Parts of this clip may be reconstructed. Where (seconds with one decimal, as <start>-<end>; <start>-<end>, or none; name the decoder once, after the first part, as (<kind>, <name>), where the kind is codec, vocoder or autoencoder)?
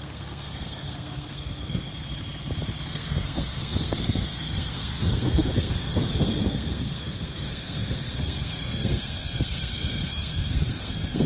0.0-1.9 (codec, SNAC); 2.9-11.3